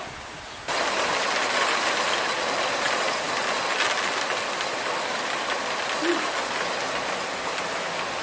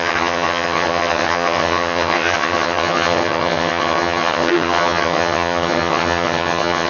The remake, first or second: second